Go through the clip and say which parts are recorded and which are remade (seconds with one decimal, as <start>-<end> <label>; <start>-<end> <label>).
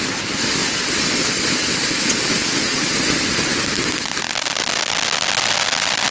0.0-6.1 recorded